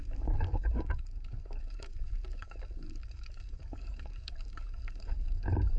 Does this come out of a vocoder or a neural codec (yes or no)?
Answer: yes